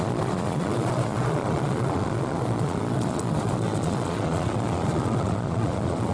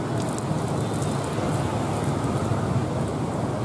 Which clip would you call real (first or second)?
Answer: second